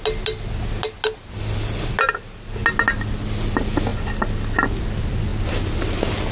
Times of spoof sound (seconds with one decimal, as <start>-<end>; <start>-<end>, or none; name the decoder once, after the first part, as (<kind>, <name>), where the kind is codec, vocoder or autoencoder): none